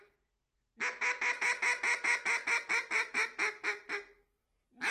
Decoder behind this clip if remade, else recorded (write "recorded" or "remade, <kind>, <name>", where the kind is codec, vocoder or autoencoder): recorded